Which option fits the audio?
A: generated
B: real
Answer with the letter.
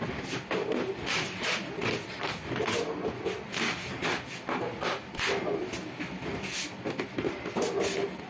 B